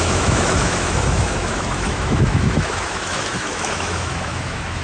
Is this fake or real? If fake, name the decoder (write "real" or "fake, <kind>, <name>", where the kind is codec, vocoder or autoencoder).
fake, autoencoder, DAC-VAE